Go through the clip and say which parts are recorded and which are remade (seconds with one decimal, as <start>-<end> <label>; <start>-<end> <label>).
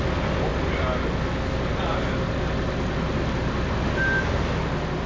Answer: 0.0-5.1 recorded